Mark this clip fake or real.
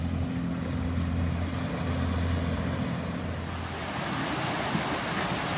real